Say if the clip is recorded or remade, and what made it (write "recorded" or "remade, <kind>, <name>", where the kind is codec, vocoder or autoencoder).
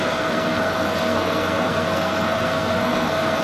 remade, codec, SNAC